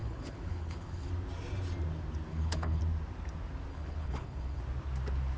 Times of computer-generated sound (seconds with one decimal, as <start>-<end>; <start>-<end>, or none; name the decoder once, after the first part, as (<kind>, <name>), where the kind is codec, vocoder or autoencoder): 0.0-1.1 (codec, HILCodec); 2.3-2.8; 3.7-4.6